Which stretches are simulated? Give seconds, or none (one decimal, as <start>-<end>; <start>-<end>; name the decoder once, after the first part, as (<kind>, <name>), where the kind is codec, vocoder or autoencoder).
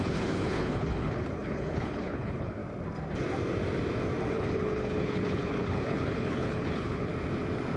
0.0-2.6 (codec, HILCodec); 4.3-7.1